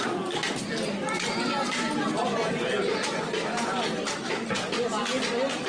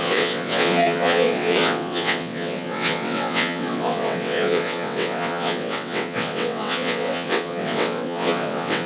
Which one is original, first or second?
first